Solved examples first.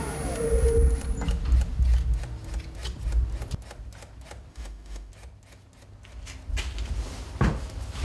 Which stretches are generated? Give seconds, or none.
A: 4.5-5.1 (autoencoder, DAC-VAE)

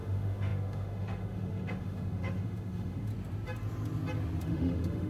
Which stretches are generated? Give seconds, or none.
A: 0.0-3.1 (autoencoder, DAC-VAE); 4.4-5.1

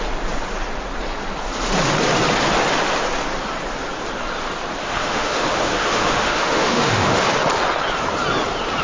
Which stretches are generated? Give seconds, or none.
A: 4.8-7.2 (autoencoder, DAC-VAE)

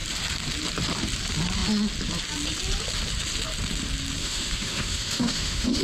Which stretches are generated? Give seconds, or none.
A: 4.2-5.8 (autoencoder, DAC-VAE)

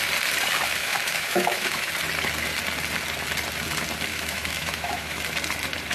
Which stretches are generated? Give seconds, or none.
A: 0.8-1.9 (autoencoder, DAC-VAE); 4.1-5.2

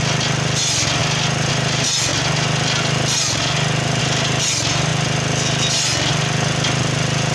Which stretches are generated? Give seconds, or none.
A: none